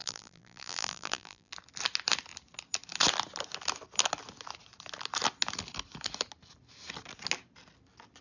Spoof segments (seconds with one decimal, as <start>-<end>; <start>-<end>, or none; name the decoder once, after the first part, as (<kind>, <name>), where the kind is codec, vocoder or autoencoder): 0.0-1.5 (vocoder, BigVGAN v2)